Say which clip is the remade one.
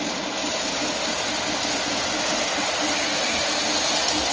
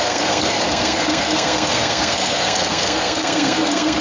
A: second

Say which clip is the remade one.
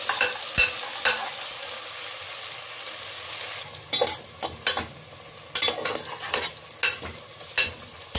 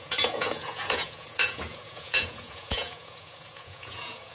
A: second